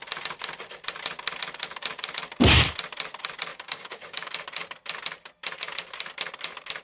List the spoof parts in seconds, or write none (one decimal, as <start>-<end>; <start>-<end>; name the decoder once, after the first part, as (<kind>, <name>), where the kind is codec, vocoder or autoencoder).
3.5-4.3 (codec, DAC)